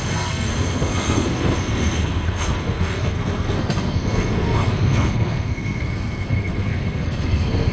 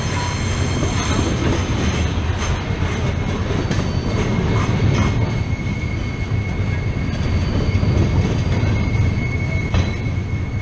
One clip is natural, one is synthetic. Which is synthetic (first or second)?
first